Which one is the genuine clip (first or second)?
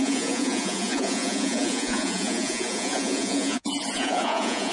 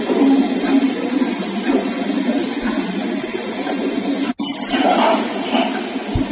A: second